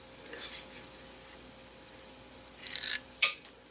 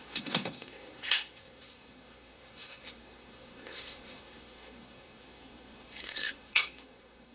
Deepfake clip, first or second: second